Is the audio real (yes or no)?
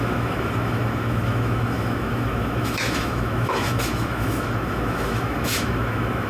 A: no